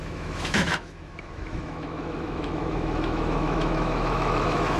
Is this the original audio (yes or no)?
no